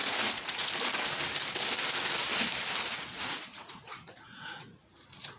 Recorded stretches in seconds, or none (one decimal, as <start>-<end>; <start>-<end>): 0.7-2.9